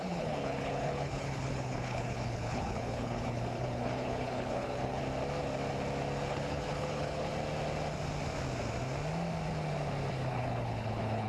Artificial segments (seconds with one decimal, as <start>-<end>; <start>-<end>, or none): 0.0-5.0; 6.3-7.3; 10.1-11.3

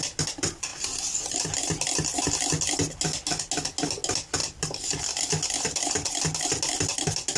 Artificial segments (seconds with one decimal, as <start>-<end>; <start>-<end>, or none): none